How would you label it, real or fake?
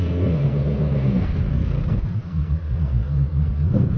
fake